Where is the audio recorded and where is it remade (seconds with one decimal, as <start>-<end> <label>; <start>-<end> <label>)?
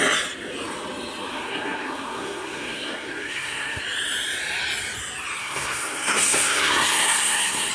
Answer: 0.0-1.3 recorded; 1.3-3.8 remade; 3.8-5.4 recorded; 5.4-7.7 remade